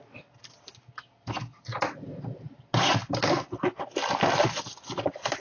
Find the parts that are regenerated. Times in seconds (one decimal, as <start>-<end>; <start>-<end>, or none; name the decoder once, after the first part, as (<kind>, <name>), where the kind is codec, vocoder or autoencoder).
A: none